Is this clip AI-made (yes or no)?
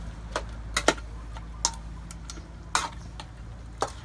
no